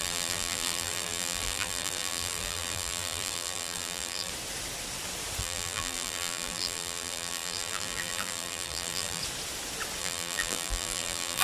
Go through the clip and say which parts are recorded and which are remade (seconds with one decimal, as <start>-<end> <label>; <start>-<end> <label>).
0.0-4.3 remade; 4.3-5.4 recorded; 5.4-9.2 remade; 9.2-10.0 recorded; 10.0-11.4 remade